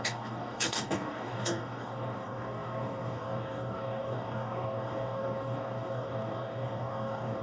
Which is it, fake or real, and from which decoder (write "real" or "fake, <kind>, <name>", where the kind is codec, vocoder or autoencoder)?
fake, codec, DAC